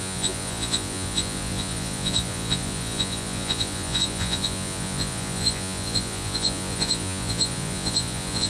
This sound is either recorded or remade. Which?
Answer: remade